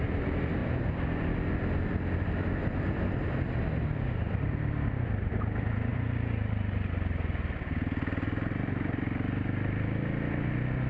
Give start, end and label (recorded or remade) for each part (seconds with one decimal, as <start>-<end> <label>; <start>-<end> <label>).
0.0-5.9 recorded; 5.9-6.9 remade; 6.9-10.9 recorded